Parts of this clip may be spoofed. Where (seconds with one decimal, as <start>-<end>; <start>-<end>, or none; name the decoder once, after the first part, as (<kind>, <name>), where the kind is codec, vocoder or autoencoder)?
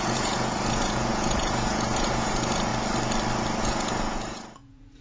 0.0-2.7 (vocoder, Vocos); 3.6-5.0